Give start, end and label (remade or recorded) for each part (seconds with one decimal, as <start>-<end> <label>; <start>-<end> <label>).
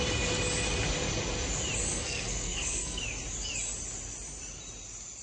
0.0-1.8 recorded; 1.8-3.0 remade; 3.0-5.2 recorded